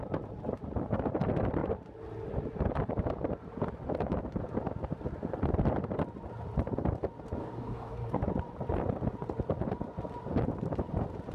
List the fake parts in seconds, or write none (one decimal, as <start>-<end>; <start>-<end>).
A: 7.4-8.2